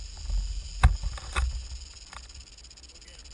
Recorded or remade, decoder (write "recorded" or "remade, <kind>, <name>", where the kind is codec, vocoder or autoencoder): recorded